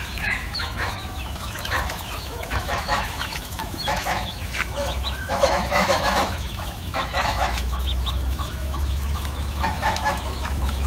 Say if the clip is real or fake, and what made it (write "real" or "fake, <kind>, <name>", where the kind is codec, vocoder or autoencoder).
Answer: fake, autoencoder, DAC-VAE